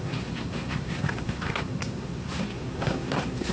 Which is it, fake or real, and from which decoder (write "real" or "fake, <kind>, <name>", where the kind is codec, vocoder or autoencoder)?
fake, codec, SNAC